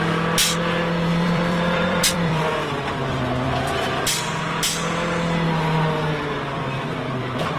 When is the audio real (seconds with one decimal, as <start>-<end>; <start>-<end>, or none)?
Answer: 0.0-1.1; 4.1-7.6